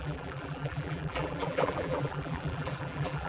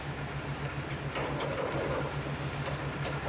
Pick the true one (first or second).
second